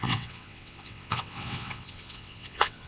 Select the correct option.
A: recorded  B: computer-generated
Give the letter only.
B